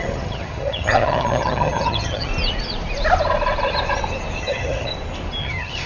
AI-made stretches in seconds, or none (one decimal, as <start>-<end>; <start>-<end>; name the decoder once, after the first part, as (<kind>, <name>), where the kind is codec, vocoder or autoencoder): 0.0-2.3 (vocoder, HiFi-GAN); 4.4-4.9; 5.4-5.9